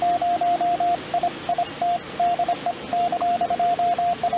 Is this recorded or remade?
recorded